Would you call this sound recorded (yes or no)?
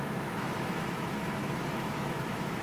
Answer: no